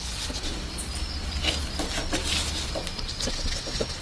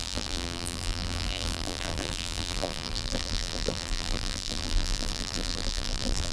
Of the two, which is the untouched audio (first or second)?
first